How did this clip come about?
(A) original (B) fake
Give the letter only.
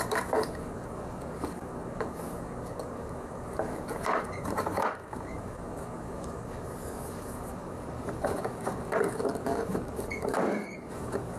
B